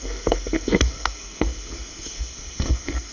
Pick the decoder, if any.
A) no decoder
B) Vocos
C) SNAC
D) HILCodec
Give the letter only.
C